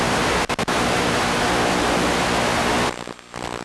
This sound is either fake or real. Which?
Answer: real